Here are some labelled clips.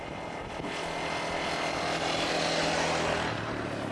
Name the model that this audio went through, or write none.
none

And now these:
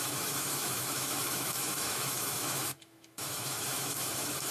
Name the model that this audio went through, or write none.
autoencoder, DAC-VAE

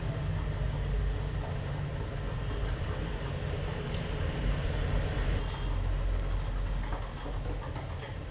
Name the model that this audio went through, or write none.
none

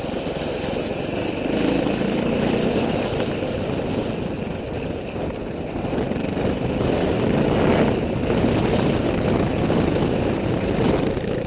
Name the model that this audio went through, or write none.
none